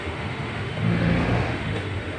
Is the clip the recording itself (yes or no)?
no